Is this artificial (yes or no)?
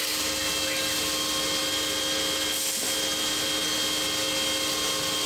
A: no